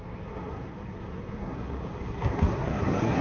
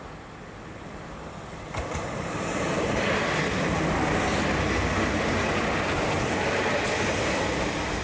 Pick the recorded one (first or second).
second